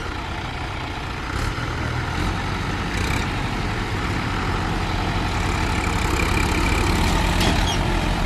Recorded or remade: recorded